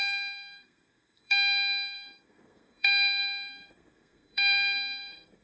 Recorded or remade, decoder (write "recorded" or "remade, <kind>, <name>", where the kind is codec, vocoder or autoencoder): remade, codec, SNAC